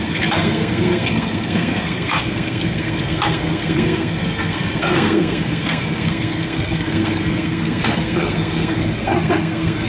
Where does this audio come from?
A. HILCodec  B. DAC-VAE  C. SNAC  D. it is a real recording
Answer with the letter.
C